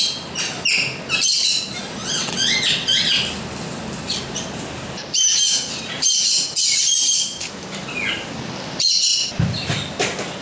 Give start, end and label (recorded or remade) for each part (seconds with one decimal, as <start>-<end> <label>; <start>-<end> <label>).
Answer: 0.0-2.0 recorded; 2.0-3.0 remade; 3.0-10.4 recorded